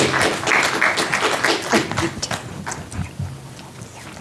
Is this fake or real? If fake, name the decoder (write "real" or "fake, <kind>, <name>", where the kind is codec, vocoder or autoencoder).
real